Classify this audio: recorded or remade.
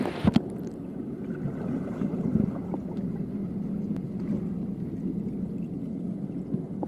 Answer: recorded